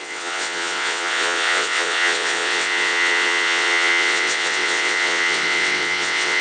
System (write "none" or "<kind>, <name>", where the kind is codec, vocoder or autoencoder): vocoder, WaveNeXt